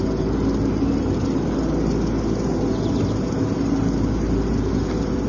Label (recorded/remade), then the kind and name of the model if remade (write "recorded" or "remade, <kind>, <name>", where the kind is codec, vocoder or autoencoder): recorded